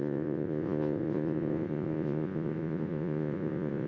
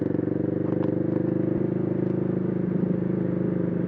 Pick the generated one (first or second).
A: first